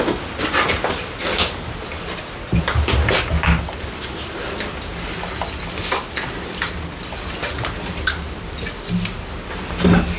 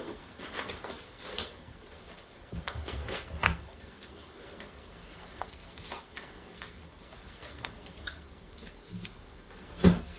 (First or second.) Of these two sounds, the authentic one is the first